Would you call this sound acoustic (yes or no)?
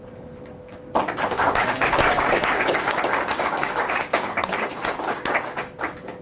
no